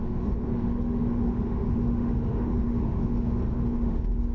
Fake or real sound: fake